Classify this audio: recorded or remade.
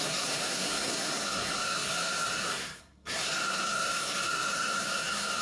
remade